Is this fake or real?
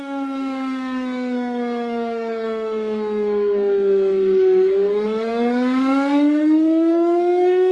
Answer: fake